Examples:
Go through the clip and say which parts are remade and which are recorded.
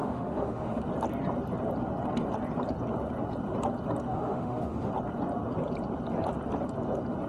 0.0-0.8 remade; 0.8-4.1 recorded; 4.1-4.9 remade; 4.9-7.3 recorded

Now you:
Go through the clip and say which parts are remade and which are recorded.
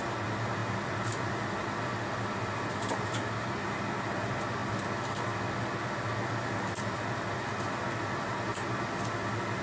0.0-9.6 recorded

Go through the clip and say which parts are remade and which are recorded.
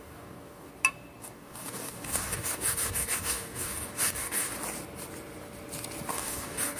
0.0-0.7 remade; 0.7-1.2 recorded; 1.2-4.5 remade; 4.5-6.1 recorded; 6.1-6.8 remade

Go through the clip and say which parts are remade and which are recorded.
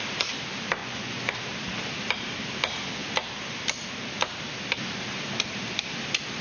0.0-0.8 recorded; 0.8-1.3 remade; 1.3-6.4 recorded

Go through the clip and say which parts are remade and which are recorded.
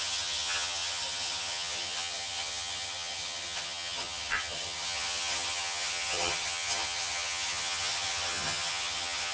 0.0-9.3 remade